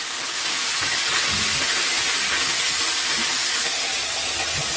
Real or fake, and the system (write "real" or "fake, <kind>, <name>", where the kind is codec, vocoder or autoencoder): real